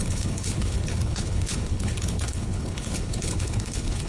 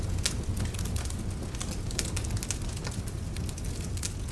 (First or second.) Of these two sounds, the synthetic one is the first